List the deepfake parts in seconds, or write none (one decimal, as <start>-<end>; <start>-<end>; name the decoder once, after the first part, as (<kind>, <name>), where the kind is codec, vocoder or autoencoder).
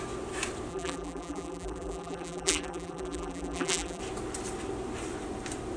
0.7-4.0 (vocoder, BigVGAN v2)